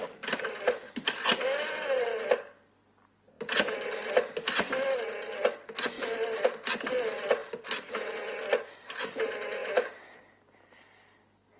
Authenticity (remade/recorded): recorded